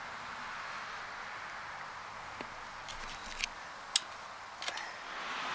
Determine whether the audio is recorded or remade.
recorded